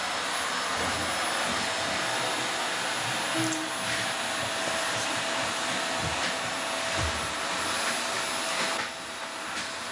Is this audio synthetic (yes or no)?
no